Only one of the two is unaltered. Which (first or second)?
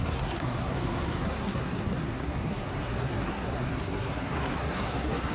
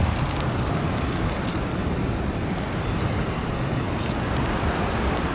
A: second